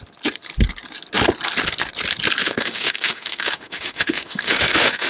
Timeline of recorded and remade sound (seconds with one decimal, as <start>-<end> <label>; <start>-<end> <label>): 0.0-2.4 recorded; 2.4-5.1 remade